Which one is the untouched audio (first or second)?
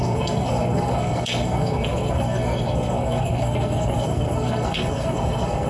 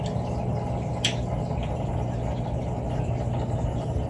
second